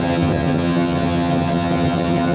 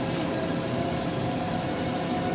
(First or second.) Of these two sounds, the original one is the second